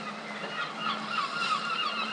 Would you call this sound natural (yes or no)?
no